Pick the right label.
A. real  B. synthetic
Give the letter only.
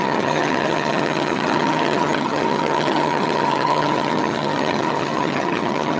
B